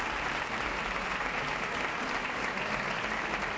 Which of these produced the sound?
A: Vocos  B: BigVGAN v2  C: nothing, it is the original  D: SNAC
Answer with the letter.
C